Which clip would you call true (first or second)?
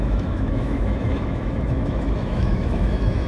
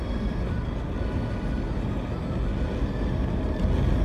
second